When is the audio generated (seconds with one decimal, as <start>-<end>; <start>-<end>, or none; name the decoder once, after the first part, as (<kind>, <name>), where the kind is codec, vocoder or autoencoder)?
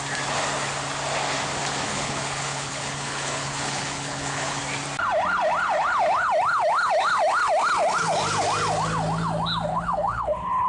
1.9-4.6 (codec, HILCodec); 9.7-10.7